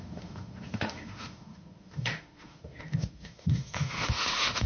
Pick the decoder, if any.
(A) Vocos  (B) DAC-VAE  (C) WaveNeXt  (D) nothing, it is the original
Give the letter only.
B